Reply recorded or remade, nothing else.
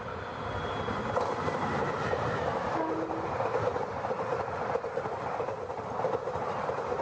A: recorded